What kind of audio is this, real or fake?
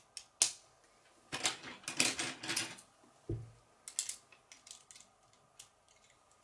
real